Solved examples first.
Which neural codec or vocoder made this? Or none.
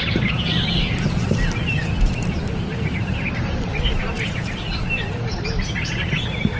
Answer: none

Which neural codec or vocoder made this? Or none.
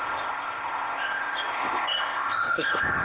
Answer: codec, ZipCodec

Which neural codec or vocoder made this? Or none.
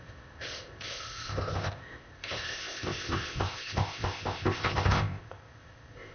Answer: codec, ZipCodec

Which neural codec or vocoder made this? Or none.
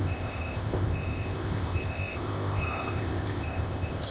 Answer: codec, ZipCodec